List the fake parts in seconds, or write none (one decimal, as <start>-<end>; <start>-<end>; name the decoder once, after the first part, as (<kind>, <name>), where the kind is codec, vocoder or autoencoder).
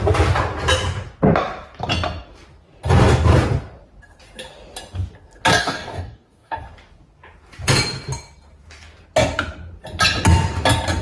5.6-6.6 (codec, DAC)